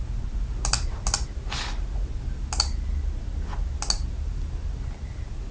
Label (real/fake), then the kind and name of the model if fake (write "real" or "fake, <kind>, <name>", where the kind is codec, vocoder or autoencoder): real